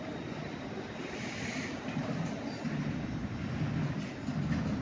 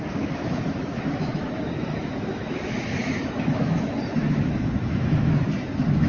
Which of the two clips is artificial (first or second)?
second